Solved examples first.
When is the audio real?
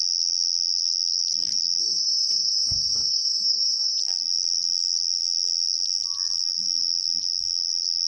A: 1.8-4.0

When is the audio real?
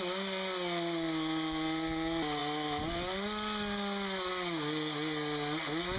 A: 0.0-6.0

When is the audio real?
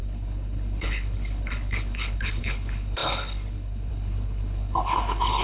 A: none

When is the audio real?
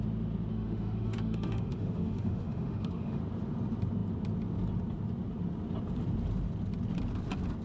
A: 0.0-0.5; 3.2-7.6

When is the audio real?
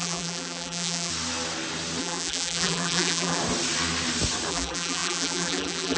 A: 1.1-2.0; 3.4-4.5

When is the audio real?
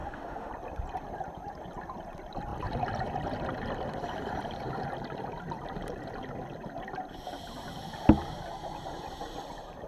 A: 0.5-9.9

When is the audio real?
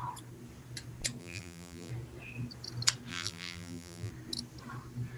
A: 0.0-1.2; 1.9-3.1; 4.1-5.2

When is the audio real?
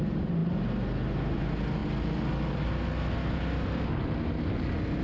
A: 0.0-5.0